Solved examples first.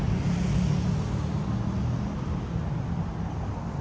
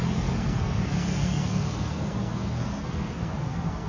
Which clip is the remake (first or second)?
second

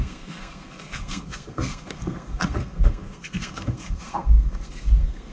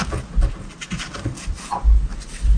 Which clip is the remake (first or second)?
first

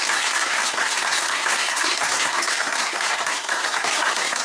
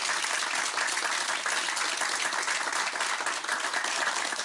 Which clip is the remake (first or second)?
first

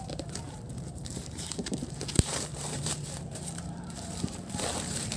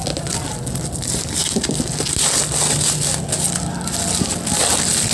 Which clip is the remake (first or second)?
first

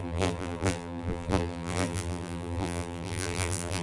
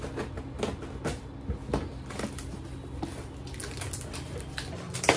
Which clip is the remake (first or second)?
first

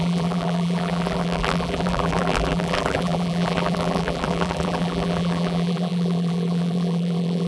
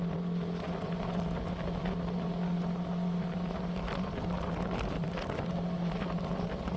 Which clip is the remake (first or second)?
first